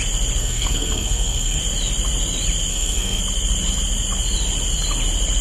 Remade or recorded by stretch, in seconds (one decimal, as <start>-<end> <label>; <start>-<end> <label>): 0.0-0.4 recorded; 0.4-1.6 remade; 1.6-2.7 recorded; 2.7-3.2 remade; 3.2-5.4 recorded